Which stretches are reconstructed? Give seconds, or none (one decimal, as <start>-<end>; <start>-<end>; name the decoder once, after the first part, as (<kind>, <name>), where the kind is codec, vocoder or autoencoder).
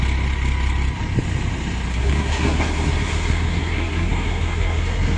1.9-5.2 (codec, SNAC)